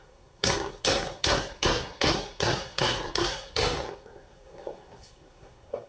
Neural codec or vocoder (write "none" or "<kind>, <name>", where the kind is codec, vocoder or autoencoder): codec, SNAC